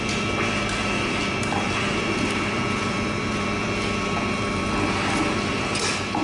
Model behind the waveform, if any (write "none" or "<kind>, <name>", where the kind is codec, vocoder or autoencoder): vocoder, BigVGAN v2